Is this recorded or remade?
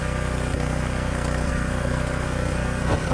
remade